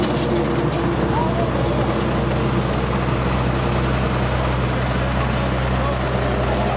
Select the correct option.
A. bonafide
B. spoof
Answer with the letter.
A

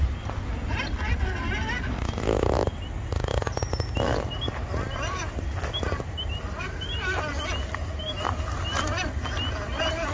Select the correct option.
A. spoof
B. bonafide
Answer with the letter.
B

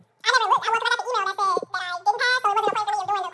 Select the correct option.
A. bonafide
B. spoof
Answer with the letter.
A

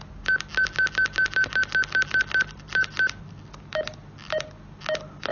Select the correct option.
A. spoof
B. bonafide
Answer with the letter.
B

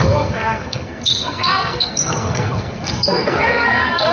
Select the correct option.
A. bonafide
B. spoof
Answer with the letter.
B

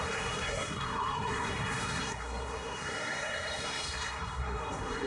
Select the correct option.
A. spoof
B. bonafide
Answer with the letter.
A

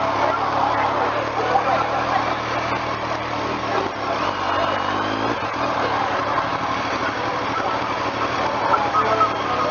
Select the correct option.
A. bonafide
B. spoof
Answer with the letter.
A